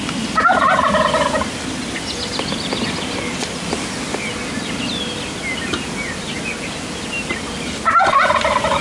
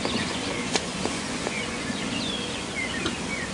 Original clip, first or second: first